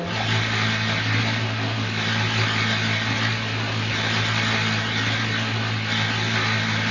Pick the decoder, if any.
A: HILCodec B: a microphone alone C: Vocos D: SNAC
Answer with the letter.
B